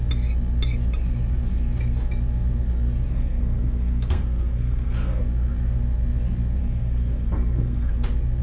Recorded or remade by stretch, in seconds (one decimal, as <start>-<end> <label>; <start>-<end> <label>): 0.0-3.1 recorded; 3.1-5.2 remade; 5.2-6.6 recorded; 6.6-7.9 remade; 7.9-8.4 recorded